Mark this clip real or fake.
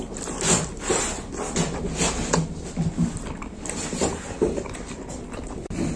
real